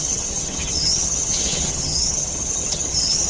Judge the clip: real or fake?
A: fake